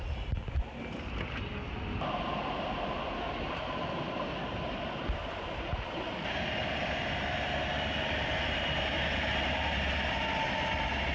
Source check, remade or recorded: recorded